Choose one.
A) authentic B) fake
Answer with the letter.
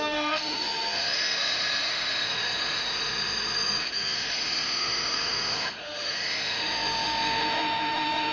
B